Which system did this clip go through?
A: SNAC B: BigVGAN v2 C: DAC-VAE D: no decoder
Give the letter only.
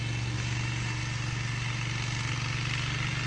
D